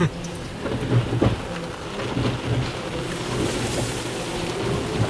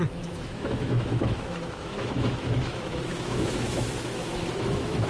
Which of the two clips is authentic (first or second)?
first